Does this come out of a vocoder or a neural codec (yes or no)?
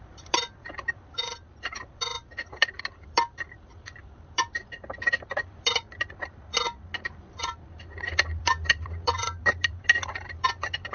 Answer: yes